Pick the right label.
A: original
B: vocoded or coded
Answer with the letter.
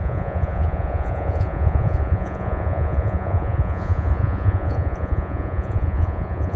B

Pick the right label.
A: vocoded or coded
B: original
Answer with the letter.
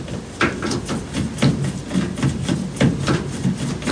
B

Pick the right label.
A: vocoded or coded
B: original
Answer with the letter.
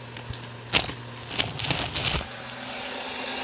B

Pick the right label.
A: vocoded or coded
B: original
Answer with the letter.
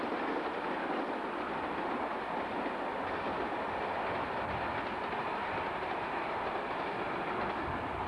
B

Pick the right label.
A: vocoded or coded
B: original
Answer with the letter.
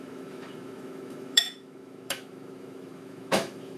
A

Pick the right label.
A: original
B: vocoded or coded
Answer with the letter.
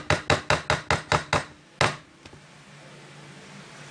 A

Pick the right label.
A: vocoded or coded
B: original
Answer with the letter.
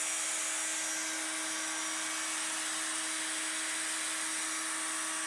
B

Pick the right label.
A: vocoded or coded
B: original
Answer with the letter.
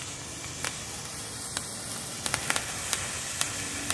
B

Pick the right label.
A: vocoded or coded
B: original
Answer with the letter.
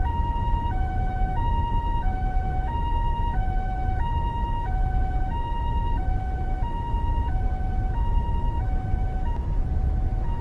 A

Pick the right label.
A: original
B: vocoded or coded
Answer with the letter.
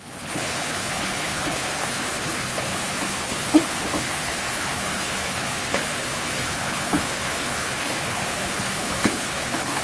B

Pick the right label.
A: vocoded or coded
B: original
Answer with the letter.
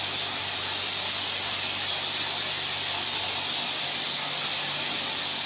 B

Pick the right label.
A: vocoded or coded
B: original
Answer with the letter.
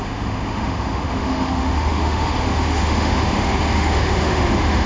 A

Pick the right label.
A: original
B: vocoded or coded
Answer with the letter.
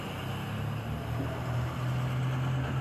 A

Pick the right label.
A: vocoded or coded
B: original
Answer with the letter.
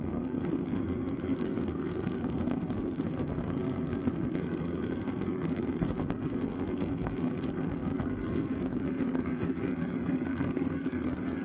A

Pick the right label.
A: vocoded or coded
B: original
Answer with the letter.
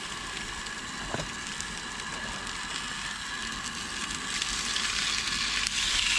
B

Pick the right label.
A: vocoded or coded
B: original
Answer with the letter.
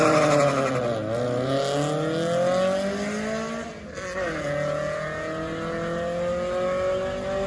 B